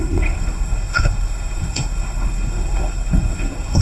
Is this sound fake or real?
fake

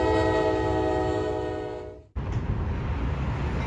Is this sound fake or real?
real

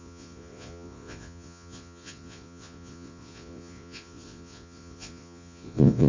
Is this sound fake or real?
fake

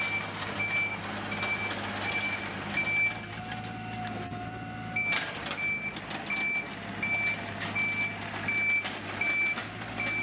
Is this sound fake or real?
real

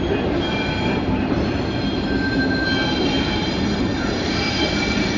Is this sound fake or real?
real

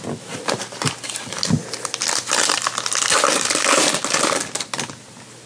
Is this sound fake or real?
real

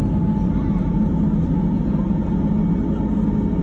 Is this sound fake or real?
real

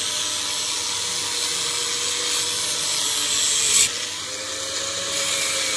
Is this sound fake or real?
real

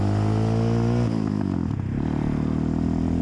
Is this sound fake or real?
real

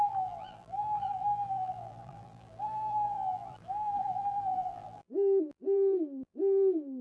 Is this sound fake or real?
fake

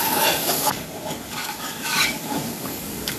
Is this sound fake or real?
fake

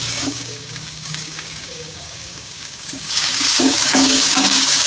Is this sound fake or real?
fake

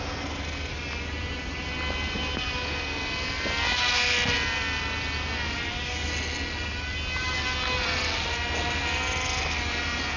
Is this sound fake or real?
real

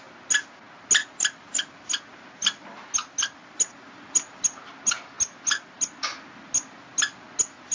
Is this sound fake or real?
real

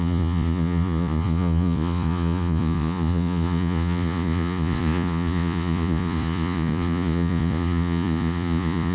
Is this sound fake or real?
fake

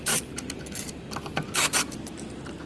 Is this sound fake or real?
real